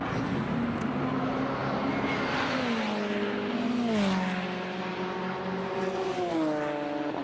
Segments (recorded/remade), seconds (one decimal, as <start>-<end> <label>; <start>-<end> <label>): 0.0-7.2 recorded